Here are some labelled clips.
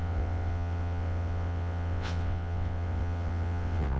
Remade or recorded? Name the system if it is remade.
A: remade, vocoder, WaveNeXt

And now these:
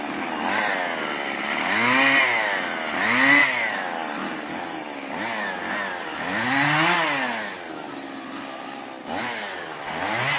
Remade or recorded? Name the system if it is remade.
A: recorded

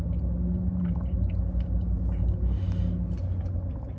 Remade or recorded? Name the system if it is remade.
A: recorded